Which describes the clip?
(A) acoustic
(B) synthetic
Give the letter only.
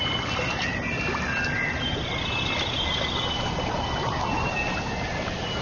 A